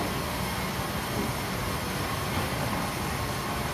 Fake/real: real